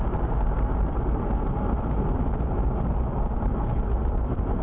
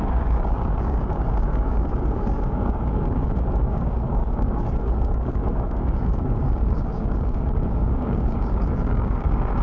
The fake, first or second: second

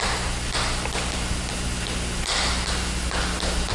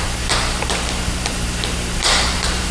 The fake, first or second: second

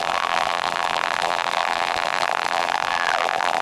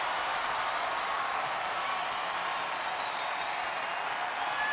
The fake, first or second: first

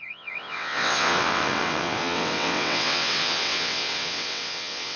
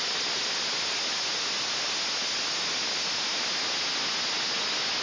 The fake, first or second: first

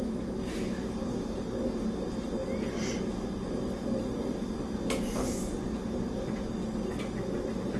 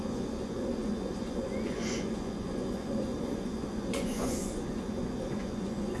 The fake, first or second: second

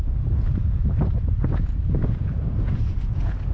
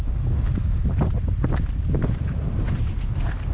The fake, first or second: first